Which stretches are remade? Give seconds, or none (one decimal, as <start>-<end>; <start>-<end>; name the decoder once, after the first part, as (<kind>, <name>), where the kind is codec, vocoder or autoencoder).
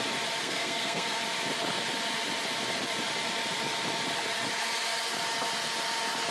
0.4-1.2 (codec, SNAC)